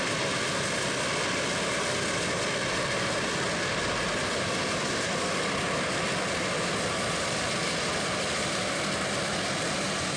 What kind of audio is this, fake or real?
real